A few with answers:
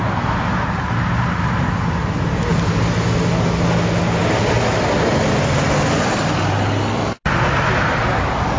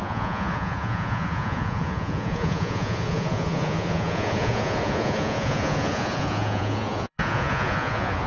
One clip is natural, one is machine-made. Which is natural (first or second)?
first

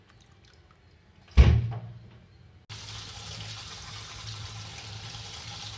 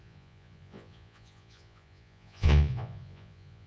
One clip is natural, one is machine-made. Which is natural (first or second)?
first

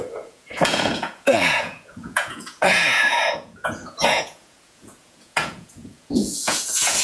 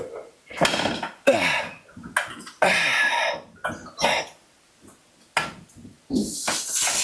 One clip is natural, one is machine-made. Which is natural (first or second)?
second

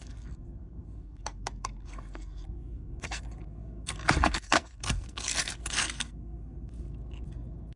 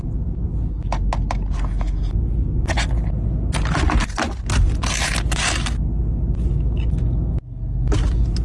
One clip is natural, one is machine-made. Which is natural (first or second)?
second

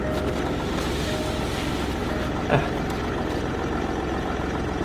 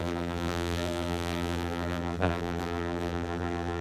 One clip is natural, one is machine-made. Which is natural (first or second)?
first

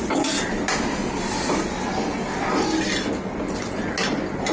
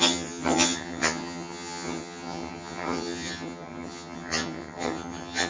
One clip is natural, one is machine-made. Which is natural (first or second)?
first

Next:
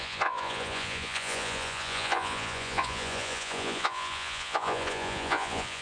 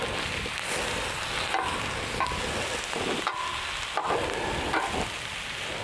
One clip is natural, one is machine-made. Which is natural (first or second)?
second